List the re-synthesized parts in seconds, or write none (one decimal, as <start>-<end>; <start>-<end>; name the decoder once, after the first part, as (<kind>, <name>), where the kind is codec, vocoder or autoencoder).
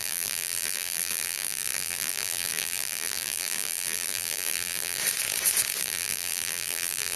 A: 0.0-5.0 (vocoder, BigVGAN v2); 5.8-7.2